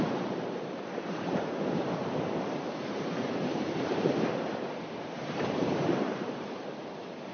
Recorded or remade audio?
remade